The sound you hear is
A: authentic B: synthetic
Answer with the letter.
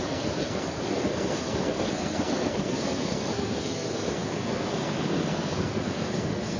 B